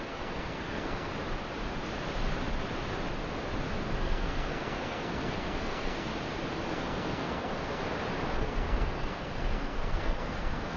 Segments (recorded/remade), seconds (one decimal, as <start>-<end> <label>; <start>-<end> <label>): 0.0-1.1 remade; 1.1-4.0 recorded; 4.0-6.1 remade; 6.1-6.7 recorded; 6.7-7.8 remade; 7.8-8.4 recorded; 8.4-10.8 remade